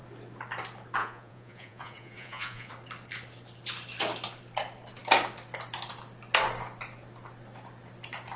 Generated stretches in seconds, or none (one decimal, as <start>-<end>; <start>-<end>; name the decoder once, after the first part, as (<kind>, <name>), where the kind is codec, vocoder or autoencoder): 1.0-2.7 (vocoder, Vocos)